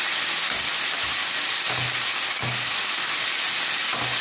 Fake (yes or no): no